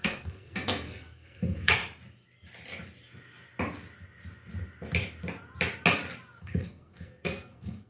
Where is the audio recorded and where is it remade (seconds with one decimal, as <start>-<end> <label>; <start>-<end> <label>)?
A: 0.0-1.8 remade; 1.8-6.4 recorded; 6.4-7.9 remade